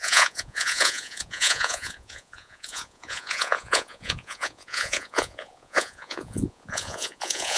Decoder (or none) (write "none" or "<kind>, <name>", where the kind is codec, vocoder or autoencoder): vocoder, Vocos